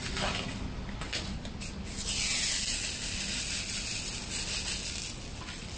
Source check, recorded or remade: recorded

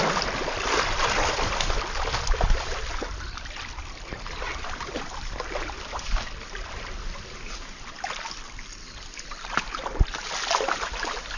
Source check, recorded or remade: recorded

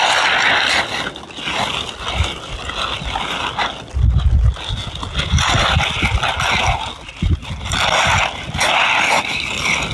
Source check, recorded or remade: recorded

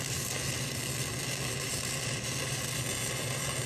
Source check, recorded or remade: recorded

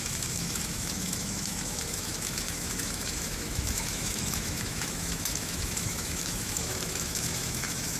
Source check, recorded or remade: remade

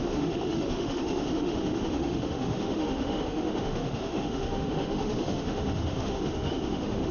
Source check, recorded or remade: remade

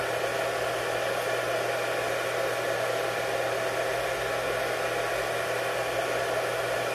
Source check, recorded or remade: recorded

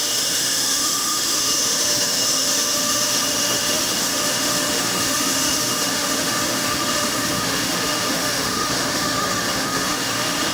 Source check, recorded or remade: remade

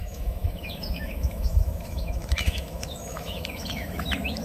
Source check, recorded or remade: remade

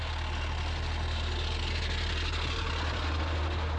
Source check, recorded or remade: recorded